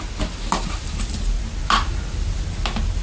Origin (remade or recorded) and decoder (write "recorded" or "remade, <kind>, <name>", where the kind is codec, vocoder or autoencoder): recorded